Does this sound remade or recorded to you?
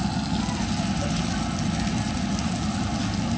recorded